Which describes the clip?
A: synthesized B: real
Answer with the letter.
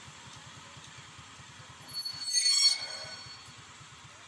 B